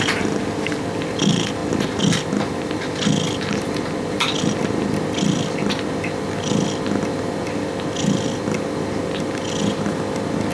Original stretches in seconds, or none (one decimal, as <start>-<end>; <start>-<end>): 0.0-10.5